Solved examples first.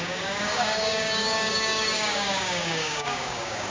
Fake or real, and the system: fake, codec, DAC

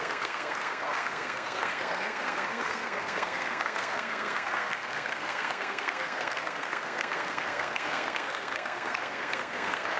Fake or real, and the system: fake, codec, SNAC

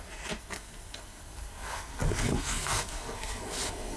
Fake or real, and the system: fake, codec, SNAC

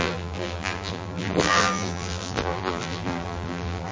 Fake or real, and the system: fake, vocoder, BigVGAN v2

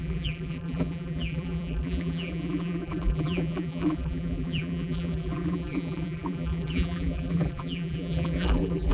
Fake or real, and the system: fake, vocoder, BigVGAN v2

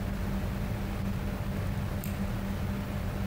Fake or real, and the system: real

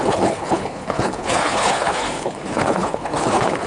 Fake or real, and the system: fake, codec, HILCodec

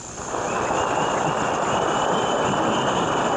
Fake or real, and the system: real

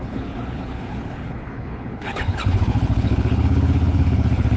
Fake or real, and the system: fake, codec, HILCodec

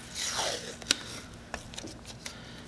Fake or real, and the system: real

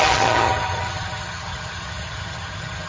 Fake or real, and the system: fake, vocoder, HiFi-GAN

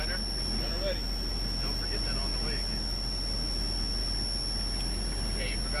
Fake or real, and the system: real